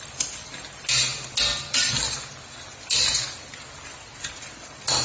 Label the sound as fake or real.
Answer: real